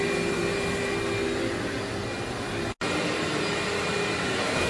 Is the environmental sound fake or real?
real